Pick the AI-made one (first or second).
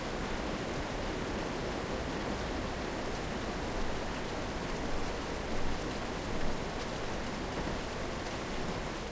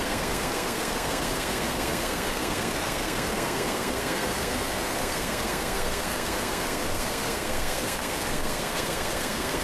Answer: second